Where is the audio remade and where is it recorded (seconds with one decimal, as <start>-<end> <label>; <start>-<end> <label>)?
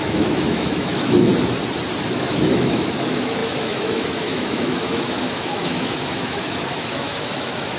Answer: 0.0-1.3 remade; 1.3-2.1 recorded; 2.1-7.8 remade